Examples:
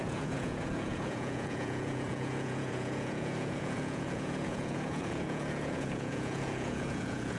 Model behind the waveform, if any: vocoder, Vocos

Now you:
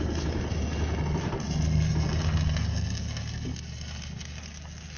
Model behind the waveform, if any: none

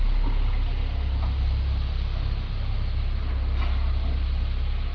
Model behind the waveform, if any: none